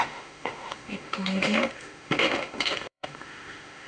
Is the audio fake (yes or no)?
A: yes